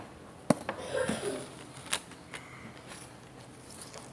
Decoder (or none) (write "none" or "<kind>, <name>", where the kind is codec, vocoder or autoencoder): none